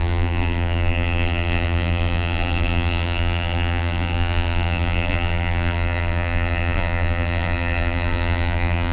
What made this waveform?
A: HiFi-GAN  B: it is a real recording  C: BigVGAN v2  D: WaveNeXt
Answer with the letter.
C